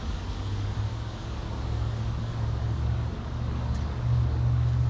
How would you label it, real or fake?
fake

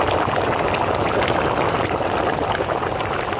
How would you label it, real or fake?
real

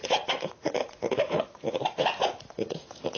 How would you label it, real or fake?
fake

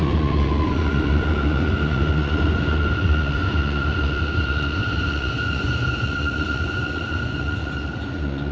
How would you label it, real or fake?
fake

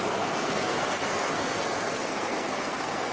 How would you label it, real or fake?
fake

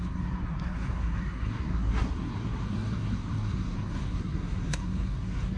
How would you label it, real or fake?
fake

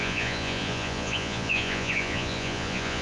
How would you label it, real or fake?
fake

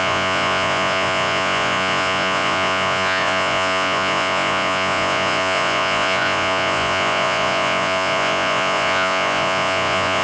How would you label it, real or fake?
fake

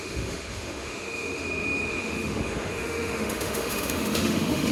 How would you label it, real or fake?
fake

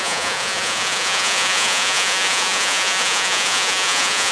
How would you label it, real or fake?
fake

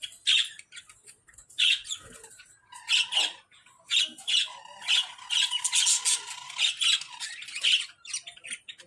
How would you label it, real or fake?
real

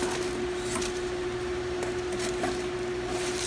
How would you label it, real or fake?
real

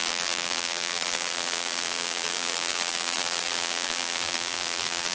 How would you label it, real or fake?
fake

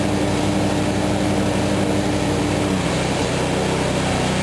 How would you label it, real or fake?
real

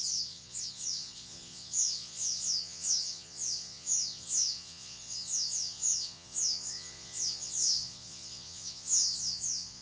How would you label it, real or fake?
fake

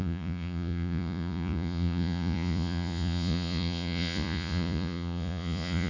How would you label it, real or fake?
fake